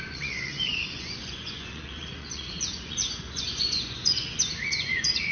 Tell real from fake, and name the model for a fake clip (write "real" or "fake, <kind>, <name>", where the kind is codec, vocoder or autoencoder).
fake, vocoder, Vocos